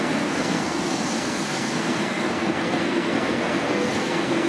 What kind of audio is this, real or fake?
fake